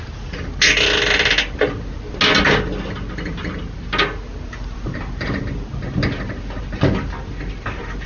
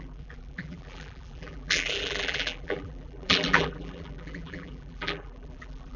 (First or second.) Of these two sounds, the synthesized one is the second